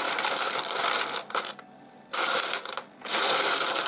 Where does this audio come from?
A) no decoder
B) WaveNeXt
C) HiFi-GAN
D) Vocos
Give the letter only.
A